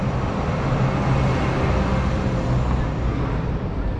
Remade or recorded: recorded